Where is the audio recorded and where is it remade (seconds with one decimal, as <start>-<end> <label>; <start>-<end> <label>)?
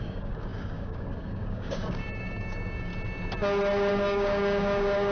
0.0-2.9 remade; 2.9-3.9 recorded; 3.9-5.1 remade